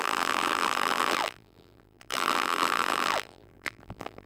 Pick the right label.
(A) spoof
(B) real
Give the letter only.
A